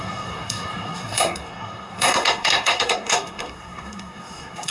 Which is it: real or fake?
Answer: fake